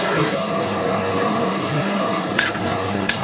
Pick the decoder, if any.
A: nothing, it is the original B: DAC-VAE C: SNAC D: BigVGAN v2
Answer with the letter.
C